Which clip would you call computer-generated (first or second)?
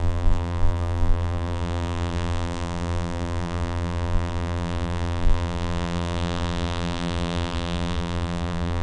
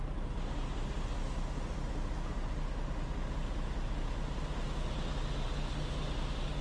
first